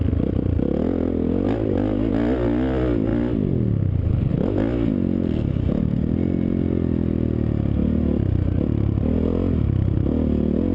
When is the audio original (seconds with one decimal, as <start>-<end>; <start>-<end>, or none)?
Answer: 0.0-10.7